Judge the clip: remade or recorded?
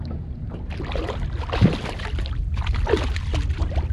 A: recorded